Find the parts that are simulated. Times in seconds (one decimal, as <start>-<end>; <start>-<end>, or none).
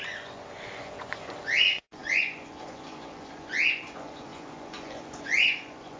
0.0-6.0